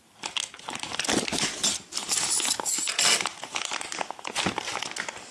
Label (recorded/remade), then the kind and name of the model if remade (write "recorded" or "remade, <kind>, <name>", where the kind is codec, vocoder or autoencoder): recorded